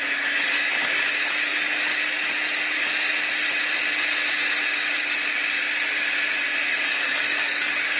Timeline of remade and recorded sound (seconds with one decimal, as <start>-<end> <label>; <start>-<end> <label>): 0.0-6.7 recorded; 6.7-8.0 remade